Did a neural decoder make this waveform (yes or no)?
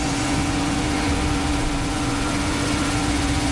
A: yes